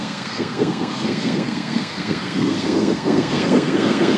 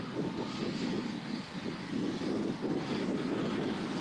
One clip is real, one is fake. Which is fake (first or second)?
first